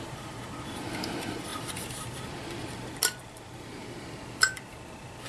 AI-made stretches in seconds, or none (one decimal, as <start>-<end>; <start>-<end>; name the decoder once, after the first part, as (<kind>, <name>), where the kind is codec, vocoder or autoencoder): 0.0-5.3 (vocoder, BigVGAN v2)